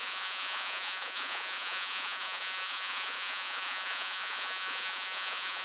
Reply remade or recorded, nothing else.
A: remade